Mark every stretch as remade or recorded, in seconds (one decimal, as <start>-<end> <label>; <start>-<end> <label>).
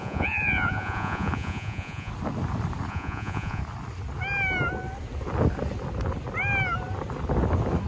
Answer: 0.0-2.1 remade; 2.1-2.9 recorded; 2.9-3.6 remade; 3.6-7.9 recorded